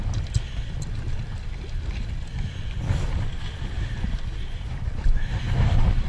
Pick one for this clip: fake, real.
real